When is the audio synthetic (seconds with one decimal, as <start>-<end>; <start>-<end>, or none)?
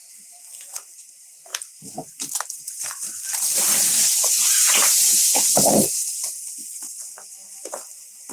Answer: none